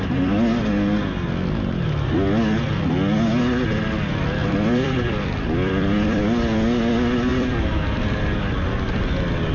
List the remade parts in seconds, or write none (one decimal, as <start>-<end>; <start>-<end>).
4.4-6.2; 7.3-8.2